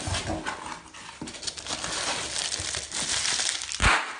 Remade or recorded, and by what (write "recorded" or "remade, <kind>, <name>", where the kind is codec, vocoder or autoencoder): recorded